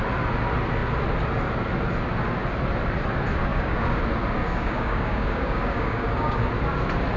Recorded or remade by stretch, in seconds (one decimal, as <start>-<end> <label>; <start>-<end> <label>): 0.0-3.5 recorded; 3.5-4.0 remade; 4.0-4.4 recorded; 4.4-6.5 remade; 6.5-7.2 recorded